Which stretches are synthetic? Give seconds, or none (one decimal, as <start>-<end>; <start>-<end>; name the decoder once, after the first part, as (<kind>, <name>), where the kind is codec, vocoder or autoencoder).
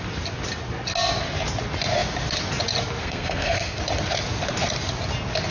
3.0-3.8 (codec, SNAC)